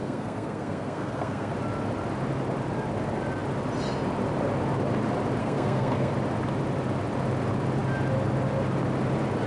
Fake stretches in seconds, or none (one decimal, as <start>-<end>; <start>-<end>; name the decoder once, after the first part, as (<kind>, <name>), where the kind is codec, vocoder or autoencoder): 0.0-1.5 (codec, SNAC); 5.4-6.1